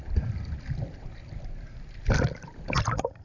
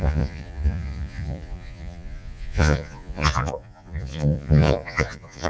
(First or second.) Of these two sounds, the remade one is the second